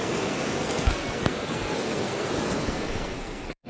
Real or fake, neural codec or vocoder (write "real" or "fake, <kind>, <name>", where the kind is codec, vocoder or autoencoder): fake, codec, SNAC